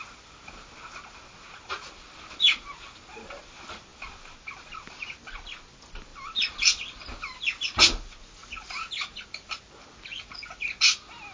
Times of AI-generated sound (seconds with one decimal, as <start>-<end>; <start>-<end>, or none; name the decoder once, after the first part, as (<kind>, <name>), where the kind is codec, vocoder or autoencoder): none